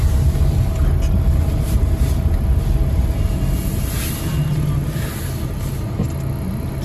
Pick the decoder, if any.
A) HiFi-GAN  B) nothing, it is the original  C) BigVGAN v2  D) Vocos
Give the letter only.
B